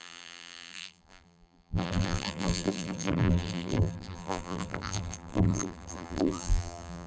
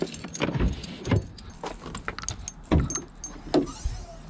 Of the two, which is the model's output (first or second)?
first